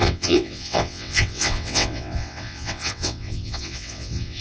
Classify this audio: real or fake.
fake